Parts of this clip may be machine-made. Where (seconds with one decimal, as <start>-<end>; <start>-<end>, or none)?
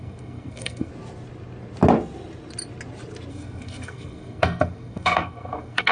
0.0-0.9; 3.3-5.9